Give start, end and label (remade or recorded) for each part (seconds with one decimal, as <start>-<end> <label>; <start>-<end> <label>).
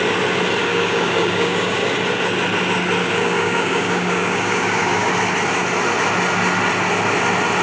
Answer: 0.0-0.6 recorded; 0.6-1.8 remade; 1.8-3.0 recorded; 3.0-5.1 remade; 5.1-7.6 recorded